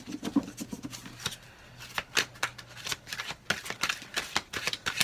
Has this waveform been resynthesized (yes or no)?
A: no